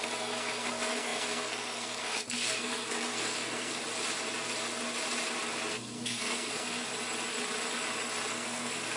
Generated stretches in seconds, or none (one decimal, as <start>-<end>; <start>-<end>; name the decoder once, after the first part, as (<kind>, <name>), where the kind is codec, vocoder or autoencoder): 0.0-3.8 (codec, SNAC); 5.7-6.9; 8.3-9.0